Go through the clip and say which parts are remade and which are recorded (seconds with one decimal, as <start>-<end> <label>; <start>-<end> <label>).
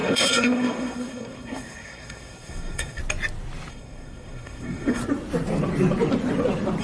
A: 0.0-3.0 remade; 3.0-3.7 recorded; 3.7-5.0 remade; 5.0-6.8 recorded